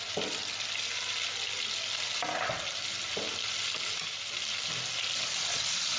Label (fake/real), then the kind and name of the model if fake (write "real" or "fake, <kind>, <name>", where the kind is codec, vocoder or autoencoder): real